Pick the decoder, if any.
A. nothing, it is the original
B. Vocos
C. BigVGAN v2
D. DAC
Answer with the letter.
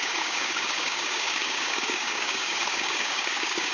D